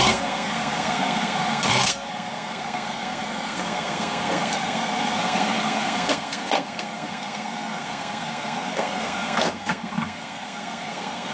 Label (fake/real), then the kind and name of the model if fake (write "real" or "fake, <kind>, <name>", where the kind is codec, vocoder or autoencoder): fake, codec, SNAC